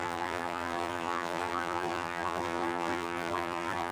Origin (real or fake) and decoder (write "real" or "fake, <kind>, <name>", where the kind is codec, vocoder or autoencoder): fake, vocoder, BigVGAN v2